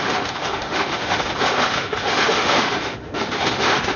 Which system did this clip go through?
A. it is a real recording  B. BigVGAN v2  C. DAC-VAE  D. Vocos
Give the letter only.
C